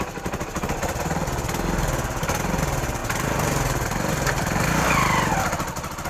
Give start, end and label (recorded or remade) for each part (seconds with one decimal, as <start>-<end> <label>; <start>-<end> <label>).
0.0-6.1 recorded